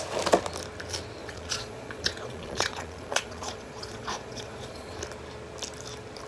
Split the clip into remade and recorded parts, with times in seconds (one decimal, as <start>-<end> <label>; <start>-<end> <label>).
0.0-1.2 recorded; 1.2-5.0 remade; 5.0-6.3 recorded